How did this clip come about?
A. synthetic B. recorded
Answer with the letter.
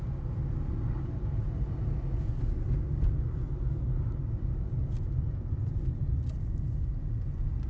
B